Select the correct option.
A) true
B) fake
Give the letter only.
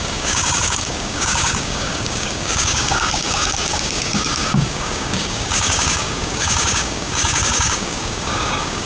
B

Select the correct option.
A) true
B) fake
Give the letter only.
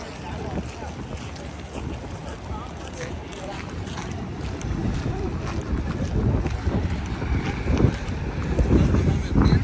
A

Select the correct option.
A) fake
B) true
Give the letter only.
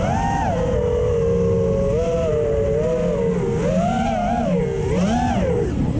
B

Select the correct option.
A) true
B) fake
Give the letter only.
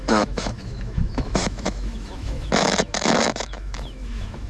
B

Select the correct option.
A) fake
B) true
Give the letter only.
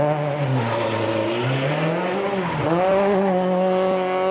B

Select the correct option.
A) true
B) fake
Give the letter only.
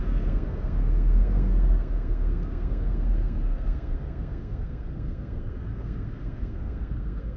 B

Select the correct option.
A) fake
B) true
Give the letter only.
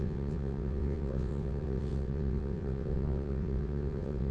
A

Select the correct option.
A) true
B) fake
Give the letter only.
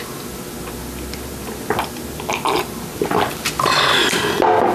A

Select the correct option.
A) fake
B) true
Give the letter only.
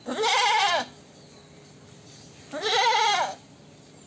B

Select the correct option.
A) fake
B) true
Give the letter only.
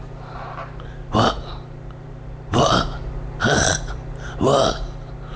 B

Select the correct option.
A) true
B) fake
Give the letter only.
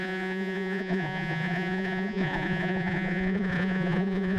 B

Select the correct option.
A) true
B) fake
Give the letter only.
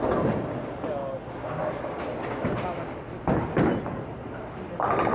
A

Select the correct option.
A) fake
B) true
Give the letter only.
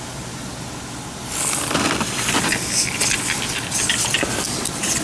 B